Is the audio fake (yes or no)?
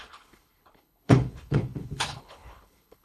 yes